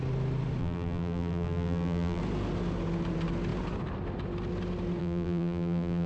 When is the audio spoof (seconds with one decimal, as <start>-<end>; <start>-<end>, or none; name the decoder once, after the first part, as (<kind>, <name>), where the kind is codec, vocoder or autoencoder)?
0.6-2.2 (vocoder, BigVGAN v2); 5.0-6.1